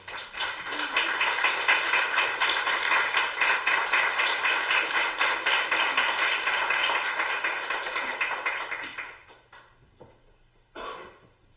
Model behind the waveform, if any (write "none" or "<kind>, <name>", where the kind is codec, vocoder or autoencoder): none